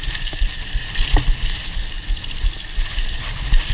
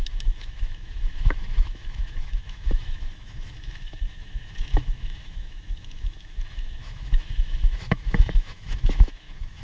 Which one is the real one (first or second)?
first